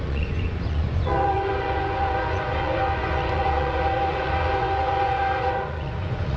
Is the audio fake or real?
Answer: fake